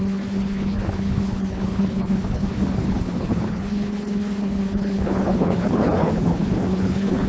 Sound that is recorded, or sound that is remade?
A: remade